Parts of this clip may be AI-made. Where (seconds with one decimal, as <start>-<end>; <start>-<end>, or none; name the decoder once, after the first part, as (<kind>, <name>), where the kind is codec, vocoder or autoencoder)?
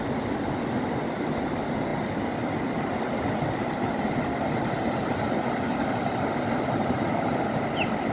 none